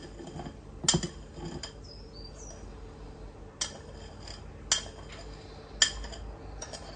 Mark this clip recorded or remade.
recorded